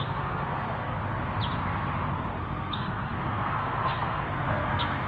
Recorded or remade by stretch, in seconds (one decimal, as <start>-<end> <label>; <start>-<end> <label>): 0.0-1.0 remade; 1.0-2.4 recorded; 2.4-5.1 remade